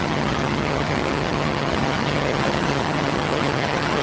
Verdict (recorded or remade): remade